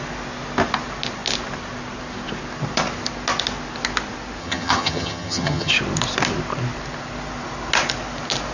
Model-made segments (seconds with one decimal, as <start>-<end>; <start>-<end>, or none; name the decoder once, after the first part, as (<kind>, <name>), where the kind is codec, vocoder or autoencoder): 4.4-5.7 (vocoder, HiFi-GAN)